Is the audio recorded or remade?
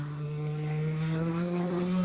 remade